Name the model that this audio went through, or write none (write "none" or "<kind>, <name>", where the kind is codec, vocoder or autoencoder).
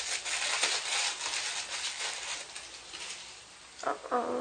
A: none